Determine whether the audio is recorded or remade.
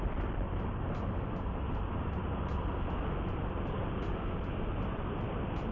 recorded